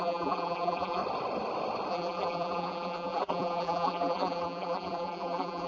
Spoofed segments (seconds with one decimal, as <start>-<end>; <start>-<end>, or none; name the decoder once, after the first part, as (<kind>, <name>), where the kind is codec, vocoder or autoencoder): 0.0-1.0 (vocoder, BigVGAN v2); 1.9-5.7